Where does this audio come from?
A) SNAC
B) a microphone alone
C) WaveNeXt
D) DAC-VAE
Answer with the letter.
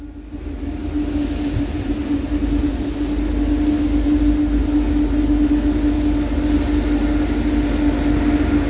B